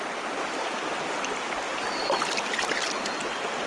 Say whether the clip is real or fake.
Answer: real